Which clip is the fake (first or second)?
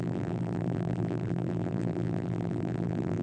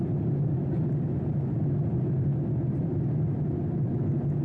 first